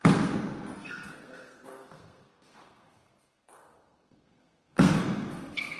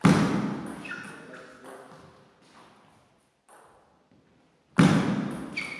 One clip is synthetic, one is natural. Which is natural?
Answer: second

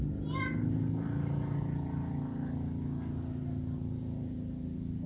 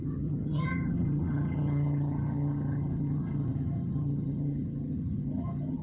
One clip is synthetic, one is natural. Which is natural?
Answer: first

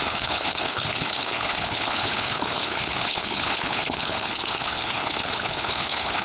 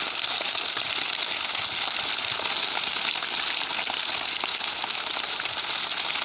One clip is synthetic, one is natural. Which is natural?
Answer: second